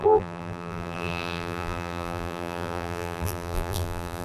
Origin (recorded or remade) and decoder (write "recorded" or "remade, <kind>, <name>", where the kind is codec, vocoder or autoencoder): remade, vocoder, BigVGAN v2